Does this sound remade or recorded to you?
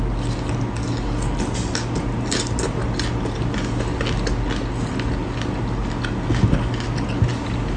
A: recorded